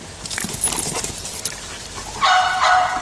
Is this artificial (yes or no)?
no